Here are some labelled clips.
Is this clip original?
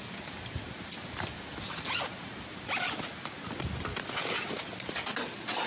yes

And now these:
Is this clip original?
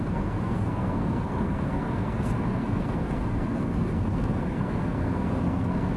no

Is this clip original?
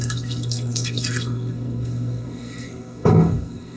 no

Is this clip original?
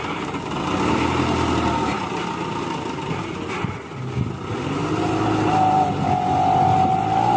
yes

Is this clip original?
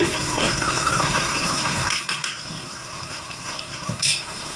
no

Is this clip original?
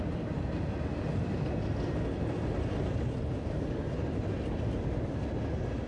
yes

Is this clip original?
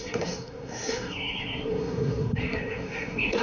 no